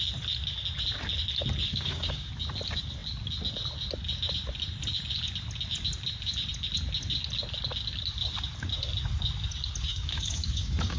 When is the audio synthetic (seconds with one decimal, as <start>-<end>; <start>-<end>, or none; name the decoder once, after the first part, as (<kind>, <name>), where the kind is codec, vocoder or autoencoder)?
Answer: 1.7-2.3 (codec, DAC); 9.9-11.0